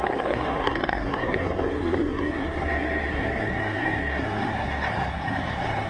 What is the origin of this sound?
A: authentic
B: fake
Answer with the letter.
B